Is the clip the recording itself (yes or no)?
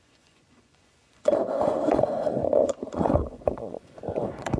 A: no